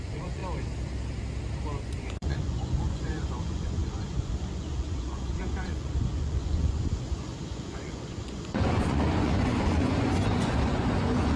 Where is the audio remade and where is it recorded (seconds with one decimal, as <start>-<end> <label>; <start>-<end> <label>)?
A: 0.0-0.4 remade; 0.4-1.8 recorded; 1.8-11.4 remade